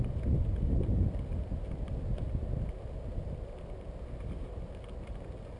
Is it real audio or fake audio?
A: real